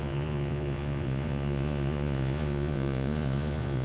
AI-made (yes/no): yes